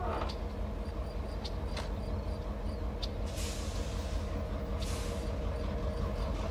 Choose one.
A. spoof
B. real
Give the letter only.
B